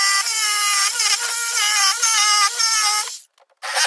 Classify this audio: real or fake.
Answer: real